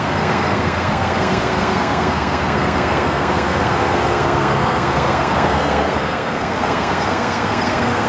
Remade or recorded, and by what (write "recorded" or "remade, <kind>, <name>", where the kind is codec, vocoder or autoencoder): remade, codec, SNAC